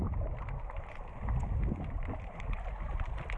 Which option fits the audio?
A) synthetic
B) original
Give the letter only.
B